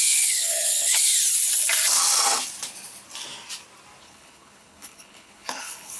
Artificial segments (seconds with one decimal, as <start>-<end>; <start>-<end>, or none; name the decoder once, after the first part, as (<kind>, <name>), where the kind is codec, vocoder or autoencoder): 0.0-1.1 (codec, HILCodec); 4.0-6.0